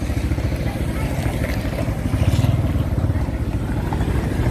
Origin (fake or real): real